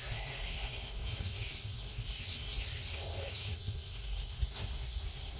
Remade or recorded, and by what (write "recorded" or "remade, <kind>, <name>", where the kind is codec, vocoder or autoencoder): remade, codec, SNAC